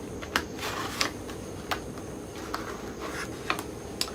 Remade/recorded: recorded